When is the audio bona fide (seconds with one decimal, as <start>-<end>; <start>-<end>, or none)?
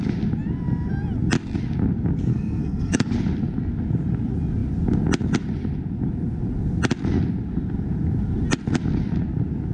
0.0-2.3; 3.1-9.7